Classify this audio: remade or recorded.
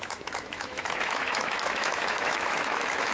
remade